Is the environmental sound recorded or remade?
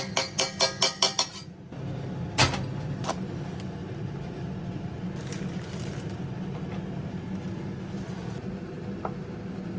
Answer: recorded